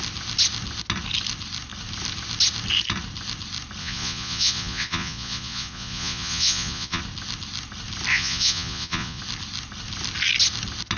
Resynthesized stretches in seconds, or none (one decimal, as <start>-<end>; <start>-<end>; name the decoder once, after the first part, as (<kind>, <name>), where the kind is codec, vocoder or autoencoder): 3.8-7.0 (vocoder, Vocos); 8.1-9.2